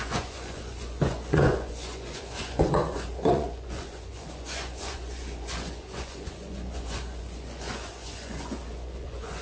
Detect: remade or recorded remade